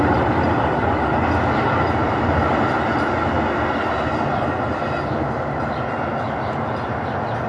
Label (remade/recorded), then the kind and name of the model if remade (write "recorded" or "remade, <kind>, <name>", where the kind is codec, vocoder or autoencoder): recorded